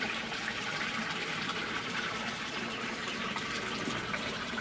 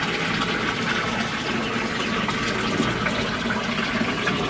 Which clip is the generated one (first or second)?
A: first